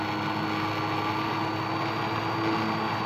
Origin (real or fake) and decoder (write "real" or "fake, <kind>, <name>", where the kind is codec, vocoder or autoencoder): real